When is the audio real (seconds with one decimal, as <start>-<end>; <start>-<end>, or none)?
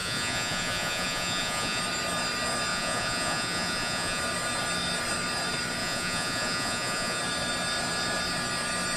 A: 1.8-2.7; 4.2-5.8; 7.2-9.0